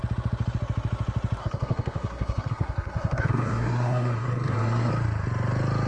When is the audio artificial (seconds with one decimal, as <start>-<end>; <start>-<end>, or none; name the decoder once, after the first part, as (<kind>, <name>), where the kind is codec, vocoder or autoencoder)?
1.4-4.9 (codec, SNAC)